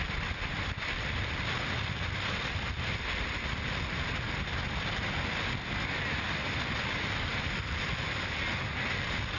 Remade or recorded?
recorded